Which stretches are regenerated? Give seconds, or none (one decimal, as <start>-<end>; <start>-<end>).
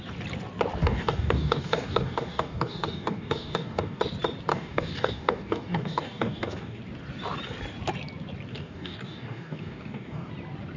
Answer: 0.8-4.0; 4.5-6.8; 8.5-10.3